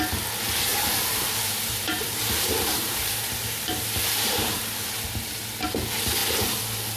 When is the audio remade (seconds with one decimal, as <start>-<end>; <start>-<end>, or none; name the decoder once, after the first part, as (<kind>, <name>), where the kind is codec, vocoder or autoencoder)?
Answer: 0.7-4.9 (vocoder, BigVGAN v2)